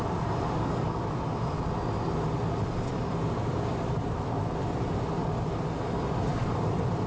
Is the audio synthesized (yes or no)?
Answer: no